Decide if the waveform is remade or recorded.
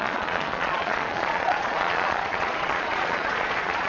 remade